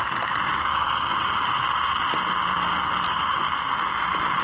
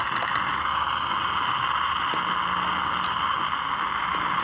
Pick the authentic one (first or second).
second